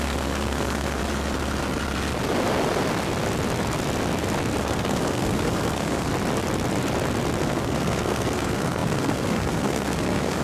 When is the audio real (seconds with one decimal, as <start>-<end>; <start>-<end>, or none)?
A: 1.0-4.6; 6.1-7.4